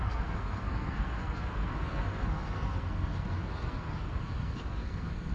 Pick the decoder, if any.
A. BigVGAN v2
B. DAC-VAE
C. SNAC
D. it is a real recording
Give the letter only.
C